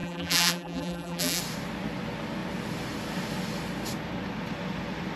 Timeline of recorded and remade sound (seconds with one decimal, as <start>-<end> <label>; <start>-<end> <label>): 0.0-1.4 remade; 1.4-5.2 recorded